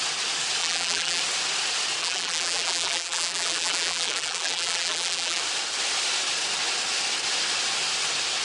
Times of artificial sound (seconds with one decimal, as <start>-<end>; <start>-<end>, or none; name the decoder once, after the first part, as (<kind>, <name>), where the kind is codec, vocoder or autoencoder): 0.6-1.2 (vocoder, BigVGAN v2); 2.0-5.4